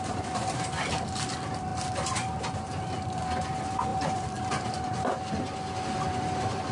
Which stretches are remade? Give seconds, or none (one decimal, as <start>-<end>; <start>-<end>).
3.9-5.3